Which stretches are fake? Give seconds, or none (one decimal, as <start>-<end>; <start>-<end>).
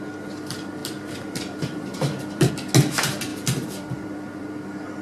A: 0.8-2.5; 3.3-4.4